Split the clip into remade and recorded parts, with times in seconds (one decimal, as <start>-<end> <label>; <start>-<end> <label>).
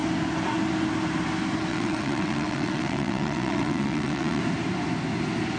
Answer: 0.0-1.7 recorded; 1.7-4.4 remade; 4.4-5.6 recorded